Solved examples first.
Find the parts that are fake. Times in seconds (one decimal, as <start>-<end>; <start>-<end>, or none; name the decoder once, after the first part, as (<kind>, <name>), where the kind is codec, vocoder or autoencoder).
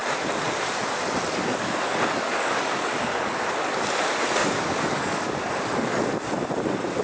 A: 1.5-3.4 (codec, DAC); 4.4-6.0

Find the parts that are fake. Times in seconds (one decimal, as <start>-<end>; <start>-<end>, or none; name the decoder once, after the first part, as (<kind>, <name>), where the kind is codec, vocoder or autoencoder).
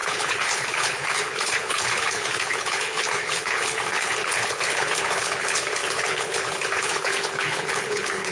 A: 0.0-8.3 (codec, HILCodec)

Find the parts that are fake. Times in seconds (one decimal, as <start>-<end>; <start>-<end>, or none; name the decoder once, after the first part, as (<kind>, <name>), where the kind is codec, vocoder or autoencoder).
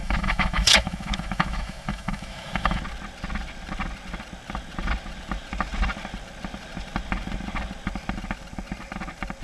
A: 0.0-2.8 (autoencoder, DAC-VAE)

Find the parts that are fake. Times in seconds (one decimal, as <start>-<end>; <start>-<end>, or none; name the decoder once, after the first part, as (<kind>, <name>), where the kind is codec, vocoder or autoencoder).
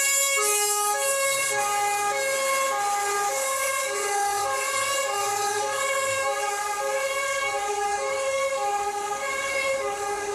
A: 0.0-1.7 (codec, DAC); 3.3-10.3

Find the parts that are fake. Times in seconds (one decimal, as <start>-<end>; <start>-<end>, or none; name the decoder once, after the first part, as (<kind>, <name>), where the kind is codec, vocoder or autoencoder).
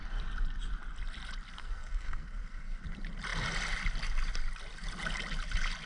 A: 1.6-2.8 (codec, SNAC)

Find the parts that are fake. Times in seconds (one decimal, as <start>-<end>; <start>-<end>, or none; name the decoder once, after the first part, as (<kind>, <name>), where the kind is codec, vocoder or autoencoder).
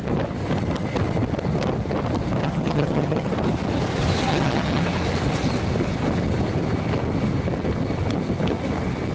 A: 2.4-3.3 (vocoder, HiFi-GAN); 4.3-4.8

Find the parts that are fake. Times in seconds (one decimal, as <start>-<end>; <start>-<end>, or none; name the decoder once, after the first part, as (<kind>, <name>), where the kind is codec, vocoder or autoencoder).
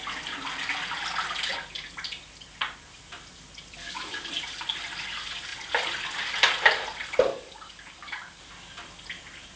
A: 3.8-4.3 (codec, DAC); 7.3-8.4